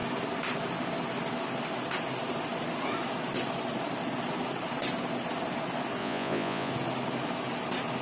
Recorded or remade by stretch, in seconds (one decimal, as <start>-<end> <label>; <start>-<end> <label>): 0.0-6.0 recorded; 6.0-6.7 remade; 6.7-8.0 recorded